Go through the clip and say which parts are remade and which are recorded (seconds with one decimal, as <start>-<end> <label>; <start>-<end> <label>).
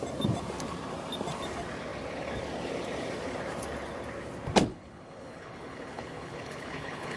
0.0-4.7 recorded; 4.7-7.2 remade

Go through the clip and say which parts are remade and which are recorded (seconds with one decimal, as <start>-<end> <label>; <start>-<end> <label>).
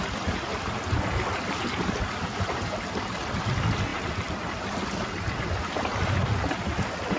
0.0-7.2 recorded